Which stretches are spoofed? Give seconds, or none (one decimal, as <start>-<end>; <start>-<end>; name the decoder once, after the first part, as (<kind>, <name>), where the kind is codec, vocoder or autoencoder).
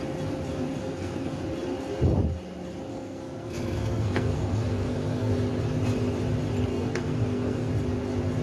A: 0.8-1.4 (codec, SNAC); 2.9-5.3; 6.7-7.7